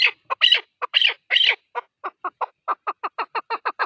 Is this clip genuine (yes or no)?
no